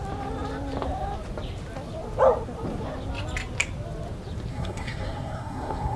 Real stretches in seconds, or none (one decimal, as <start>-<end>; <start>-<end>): 0.0-4.5